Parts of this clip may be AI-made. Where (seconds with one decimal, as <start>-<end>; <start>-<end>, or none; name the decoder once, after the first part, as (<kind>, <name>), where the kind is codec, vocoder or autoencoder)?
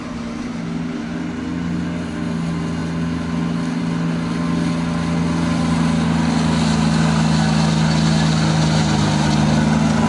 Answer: none